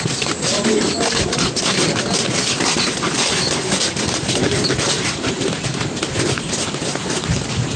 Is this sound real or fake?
real